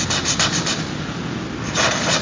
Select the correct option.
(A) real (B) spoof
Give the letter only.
A